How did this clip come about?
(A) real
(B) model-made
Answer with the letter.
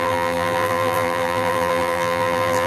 B